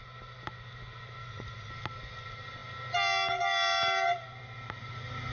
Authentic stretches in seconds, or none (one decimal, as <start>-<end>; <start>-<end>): 0.0-1.2; 1.7-5.3